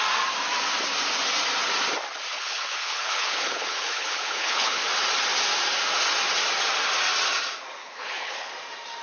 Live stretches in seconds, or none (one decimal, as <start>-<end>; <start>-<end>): 0.0-2.3; 4.8-7.8; 8.5-9.0